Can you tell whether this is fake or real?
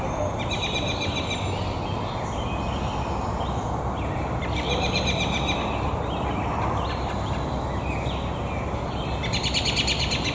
real